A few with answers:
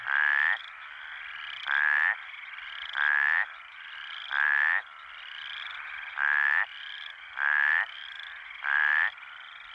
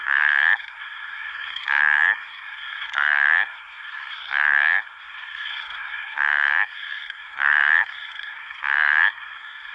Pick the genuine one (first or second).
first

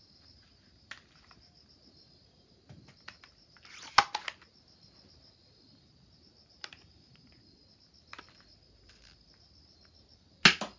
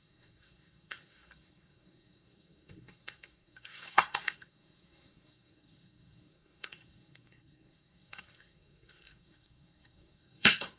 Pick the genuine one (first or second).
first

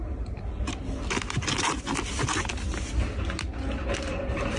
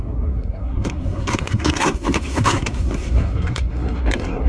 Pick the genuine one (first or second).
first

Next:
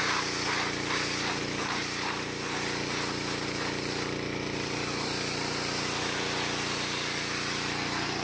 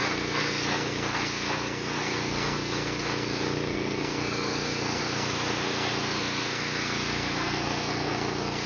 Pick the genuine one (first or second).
first